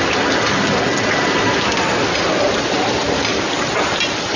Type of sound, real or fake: real